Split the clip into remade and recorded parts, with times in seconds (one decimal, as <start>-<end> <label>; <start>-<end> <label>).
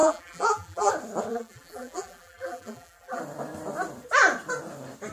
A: 0.0-0.9 remade; 0.9-1.3 recorded; 1.3-3.2 remade; 3.2-5.1 recorded